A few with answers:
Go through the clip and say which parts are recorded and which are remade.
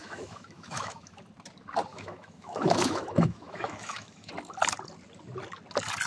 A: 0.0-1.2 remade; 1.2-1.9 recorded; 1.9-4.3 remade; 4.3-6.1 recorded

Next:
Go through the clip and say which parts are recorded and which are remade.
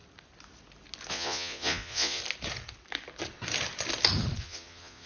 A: 0.0-1.1 recorded; 1.1-2.2 remade; 2.2-4.4 recorded; 4.4-5.1 remade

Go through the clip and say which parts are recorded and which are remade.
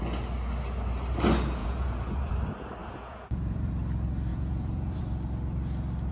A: 0.0-1.6 recorded; 1.6-2.3 remade; 2.3-2.8 recorded; 2.8-3.7 remade; 3.7-4.3 recorded; 4.3-5.0 remade; 5.0-6.1 recorded